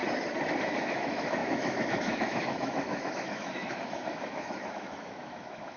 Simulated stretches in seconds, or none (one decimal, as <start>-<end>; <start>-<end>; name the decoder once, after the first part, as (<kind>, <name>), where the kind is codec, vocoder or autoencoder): 0.6-5.8 (autoencoder, DAC-VAE)